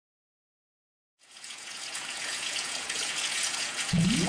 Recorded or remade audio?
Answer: remade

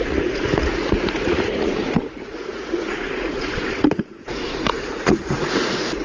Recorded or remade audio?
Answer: remade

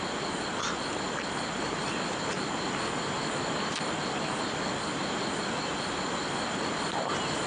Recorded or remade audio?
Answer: recorded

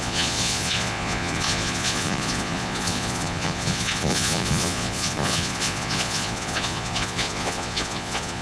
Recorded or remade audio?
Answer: remade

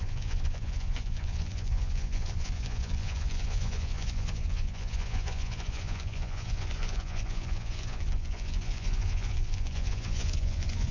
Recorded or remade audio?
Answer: remade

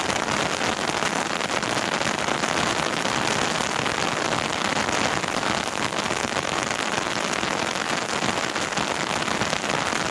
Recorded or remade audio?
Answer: recorded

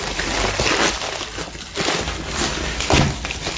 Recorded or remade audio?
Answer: recorded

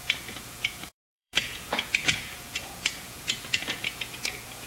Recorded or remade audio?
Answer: remade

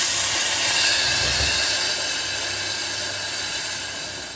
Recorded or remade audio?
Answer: recorded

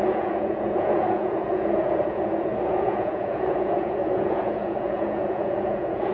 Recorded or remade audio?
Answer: remade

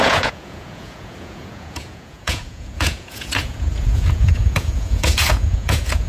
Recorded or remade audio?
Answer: remade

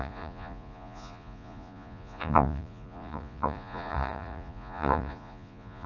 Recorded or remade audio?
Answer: remade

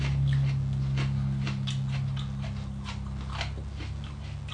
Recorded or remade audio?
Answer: recorded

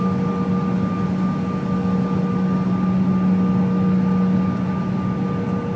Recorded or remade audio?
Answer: recorded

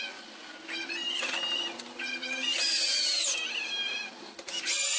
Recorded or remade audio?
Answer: recorded